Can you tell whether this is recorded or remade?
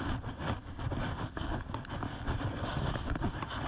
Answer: recorded